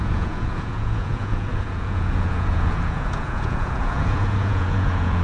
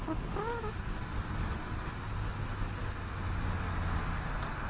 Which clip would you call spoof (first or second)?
first